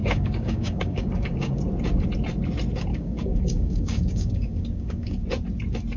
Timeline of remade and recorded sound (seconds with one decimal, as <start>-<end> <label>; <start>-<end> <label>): 0.0-1.6 remade; 1.6-2.9 recorded; 2.9-5.2 remade; 5.2-6.0 recorded